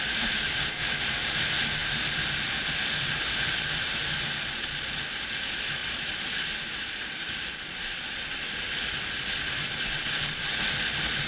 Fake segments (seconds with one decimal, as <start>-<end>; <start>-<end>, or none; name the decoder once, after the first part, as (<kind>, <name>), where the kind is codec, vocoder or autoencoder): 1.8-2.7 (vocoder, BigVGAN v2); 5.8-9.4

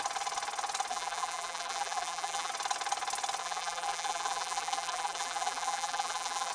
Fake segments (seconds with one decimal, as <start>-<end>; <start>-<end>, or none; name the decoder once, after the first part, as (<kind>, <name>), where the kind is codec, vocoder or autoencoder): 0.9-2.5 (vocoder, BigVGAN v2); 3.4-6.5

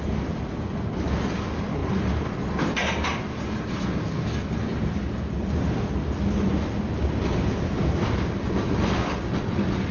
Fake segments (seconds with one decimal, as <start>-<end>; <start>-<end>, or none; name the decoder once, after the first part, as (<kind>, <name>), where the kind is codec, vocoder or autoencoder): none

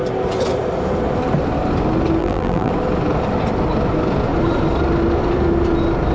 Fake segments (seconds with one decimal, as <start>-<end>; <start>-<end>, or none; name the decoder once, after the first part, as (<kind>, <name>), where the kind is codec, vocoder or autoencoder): 2.2-2.7 (vocoder, BigVGAN v2)